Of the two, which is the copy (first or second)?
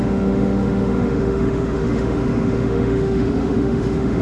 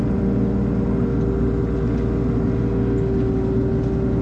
first